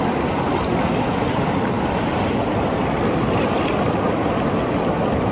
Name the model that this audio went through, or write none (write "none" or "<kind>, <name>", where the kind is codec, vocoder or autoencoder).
none